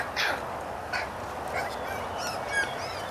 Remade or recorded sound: recorded